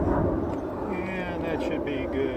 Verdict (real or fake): real